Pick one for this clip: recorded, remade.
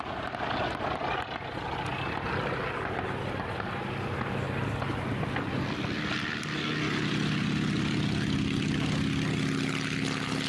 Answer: recorded